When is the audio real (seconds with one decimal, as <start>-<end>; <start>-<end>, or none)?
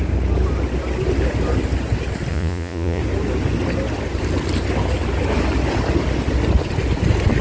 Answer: 0.0-2.3; 3.0-7.4